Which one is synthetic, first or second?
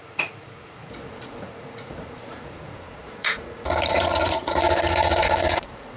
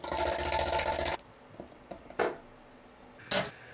first